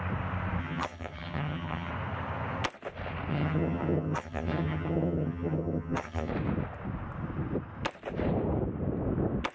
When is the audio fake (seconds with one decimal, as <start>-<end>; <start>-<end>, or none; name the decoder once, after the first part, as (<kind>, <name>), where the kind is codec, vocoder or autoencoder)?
0.6-1.9 (vocoder, HiFi-GAN); 3.3-6.3